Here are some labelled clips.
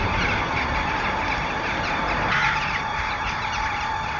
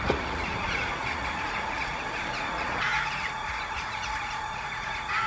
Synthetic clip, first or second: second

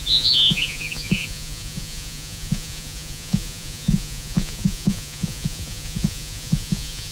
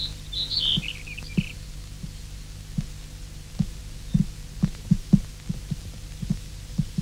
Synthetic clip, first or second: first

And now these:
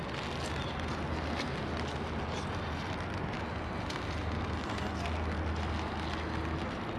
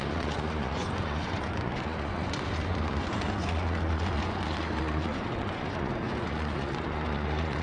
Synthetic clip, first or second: second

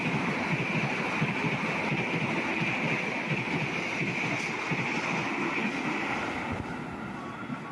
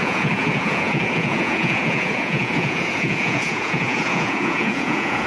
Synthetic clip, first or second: second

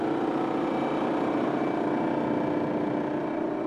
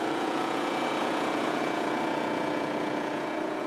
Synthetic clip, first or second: second